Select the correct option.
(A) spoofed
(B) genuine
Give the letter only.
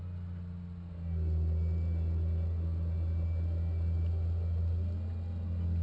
B